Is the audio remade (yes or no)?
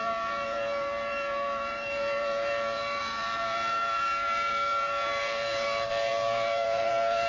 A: yes